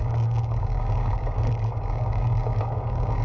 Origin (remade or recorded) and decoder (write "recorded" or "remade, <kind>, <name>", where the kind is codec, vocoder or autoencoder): remade, codec, DAC